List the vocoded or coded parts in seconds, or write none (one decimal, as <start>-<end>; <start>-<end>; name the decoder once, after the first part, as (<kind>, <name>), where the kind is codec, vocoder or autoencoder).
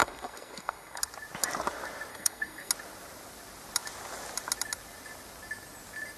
0.0-1.0 (codec, SNAC); 2.1-2.7